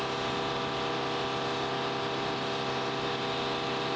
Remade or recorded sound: recorded